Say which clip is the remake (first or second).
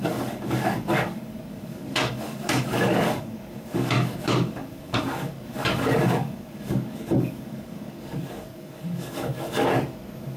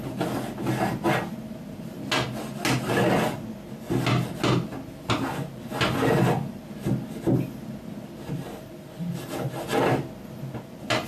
first